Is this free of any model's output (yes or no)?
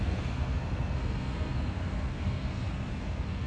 no